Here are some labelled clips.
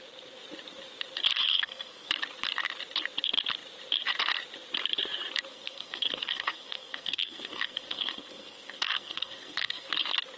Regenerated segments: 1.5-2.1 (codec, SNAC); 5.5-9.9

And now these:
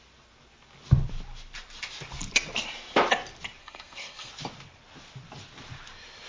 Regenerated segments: 3.6-4.3 (codec, SNAC)

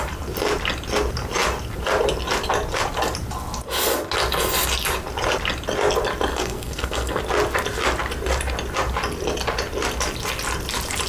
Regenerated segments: 6.3-7.2 (codec, SNAC)

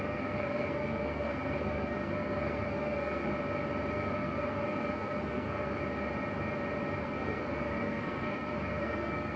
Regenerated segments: 0.0-3.3 (codec, SNAC); 3.9-5.8; 7.0-9.4